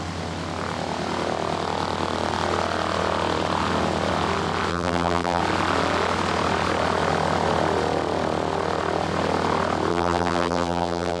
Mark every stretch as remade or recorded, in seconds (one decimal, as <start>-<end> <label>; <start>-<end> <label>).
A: 0.0-4.7 recorded; 4.7-5.4 remade; 5.4-9.9 recorded; 9.9-11.2 remade